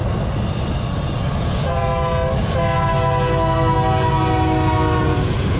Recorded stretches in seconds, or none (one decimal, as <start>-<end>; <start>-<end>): 0.0-1.4; 1.9-5.0